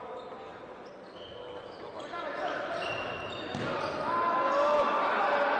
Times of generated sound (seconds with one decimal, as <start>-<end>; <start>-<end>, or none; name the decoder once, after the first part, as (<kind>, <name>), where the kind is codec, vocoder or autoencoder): none